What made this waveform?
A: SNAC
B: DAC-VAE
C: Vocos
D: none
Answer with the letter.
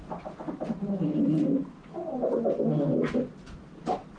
D